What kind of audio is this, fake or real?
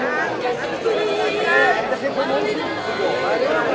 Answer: real